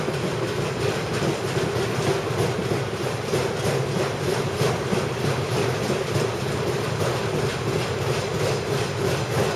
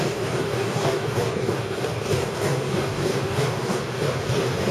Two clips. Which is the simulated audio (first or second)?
second